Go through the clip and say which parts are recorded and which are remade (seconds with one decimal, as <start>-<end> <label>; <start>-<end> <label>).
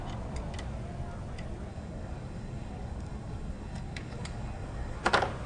0.0-1.7 recorded; 1.7-5.0 remade; 5.0-5.5 recorded